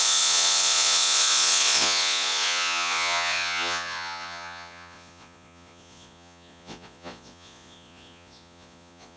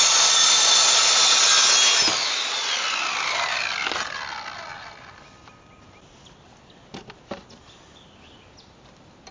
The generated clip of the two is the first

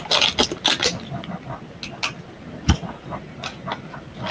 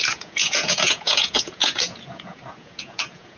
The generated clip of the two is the second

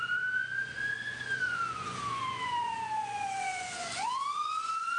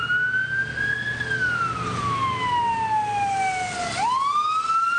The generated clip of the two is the first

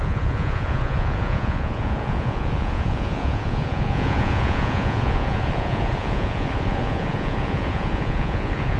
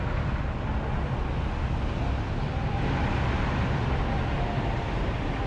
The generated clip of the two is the first